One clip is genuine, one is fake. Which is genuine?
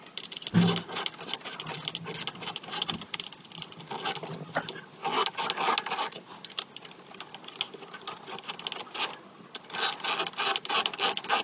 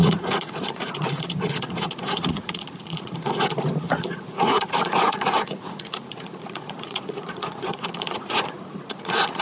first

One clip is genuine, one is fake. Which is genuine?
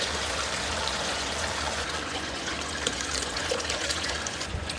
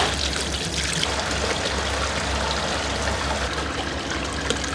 second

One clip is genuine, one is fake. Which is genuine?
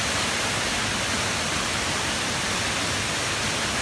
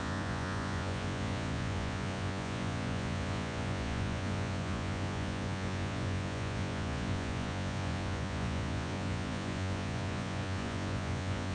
first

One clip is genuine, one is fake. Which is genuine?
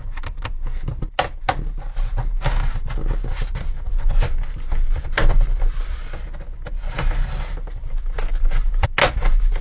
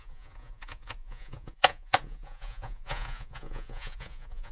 first